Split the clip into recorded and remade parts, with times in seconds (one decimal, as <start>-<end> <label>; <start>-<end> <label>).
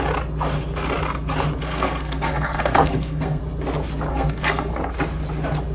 0.0-1.6 recorded; 1.6-3.4 remade; 3.4-4.1 recorded; 4.1-4.7 remade; 4.7-5.7 recorded